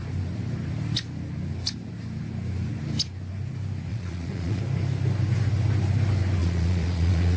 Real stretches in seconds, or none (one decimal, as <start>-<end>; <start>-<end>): 0.0-3.9; 4.6-6.4